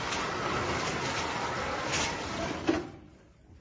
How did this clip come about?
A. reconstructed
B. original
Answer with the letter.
B